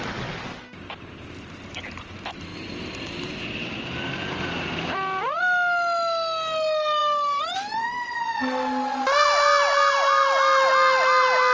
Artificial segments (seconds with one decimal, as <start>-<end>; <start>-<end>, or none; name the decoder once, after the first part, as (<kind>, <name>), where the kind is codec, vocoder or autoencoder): none